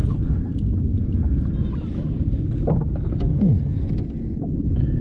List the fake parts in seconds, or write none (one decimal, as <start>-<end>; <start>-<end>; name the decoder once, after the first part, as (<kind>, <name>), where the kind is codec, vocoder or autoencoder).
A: 3.3-3.9 (codec, SNAC)